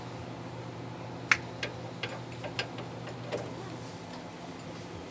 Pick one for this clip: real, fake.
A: real